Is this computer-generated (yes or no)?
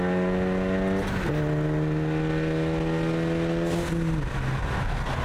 no